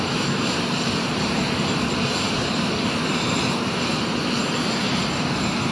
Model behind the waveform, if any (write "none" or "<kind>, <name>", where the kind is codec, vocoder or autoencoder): vocoder, BigVGAN v2